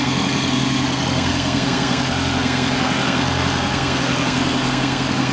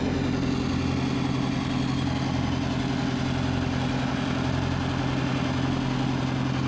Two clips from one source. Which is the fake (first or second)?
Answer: first